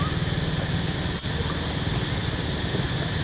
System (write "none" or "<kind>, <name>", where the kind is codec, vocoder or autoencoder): none